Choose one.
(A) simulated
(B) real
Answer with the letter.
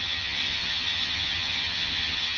A